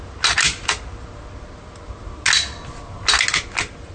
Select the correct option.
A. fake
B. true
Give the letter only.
B